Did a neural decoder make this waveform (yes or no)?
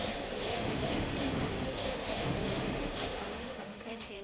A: yes